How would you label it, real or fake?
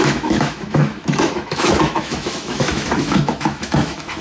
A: fake